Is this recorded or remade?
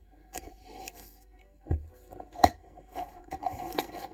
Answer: remade